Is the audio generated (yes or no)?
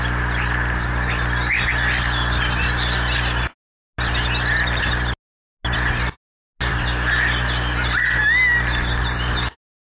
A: no